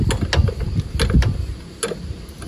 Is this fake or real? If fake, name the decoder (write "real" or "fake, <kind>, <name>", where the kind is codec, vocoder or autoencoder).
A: real